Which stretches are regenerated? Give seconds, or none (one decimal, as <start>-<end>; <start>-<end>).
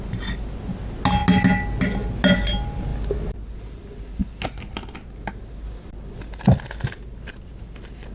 none